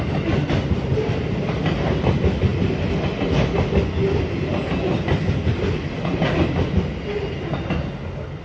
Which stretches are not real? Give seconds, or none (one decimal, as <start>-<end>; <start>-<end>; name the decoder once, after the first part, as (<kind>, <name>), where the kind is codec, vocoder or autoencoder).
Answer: none